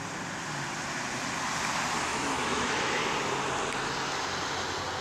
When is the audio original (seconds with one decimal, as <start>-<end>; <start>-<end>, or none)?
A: 0.0-2.1; 3.0-5.0